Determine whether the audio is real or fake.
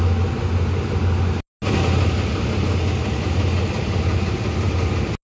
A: real